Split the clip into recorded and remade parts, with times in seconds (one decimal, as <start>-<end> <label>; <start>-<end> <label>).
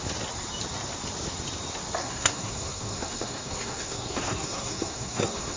0.0-2.0 recorded; 2.0-5.6 remade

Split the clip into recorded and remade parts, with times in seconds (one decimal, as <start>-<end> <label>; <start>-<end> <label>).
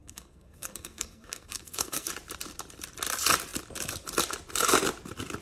0.0-2.1 remade; 2.1-5.4 recorded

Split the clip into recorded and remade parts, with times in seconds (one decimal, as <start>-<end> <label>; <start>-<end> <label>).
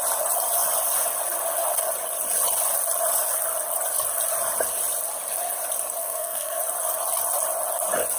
0.0-6.0 recorded; 6.0-6.6 remade; 6.6-8.2 recorded